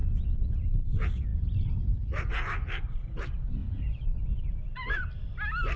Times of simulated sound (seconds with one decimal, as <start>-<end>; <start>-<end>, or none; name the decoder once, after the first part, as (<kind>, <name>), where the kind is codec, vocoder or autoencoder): 0.0-0.6 (vocoder, Vocos); 3.6-5.0